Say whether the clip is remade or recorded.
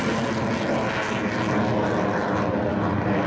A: recorded